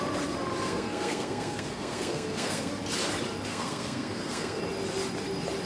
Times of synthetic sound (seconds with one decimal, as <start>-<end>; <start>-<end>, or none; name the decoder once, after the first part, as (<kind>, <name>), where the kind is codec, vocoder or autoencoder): 0.6-2.7 (codec, SNAC); 3.5-4.6